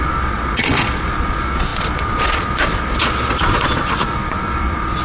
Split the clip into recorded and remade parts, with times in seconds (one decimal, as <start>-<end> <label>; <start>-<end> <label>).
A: 0.0-5.0 remade